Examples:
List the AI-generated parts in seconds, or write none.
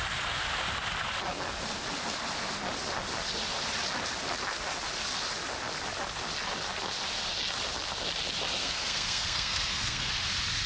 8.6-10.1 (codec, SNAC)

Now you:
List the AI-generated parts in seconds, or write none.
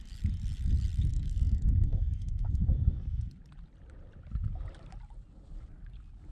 1.1-3.3 (codec, SNAC)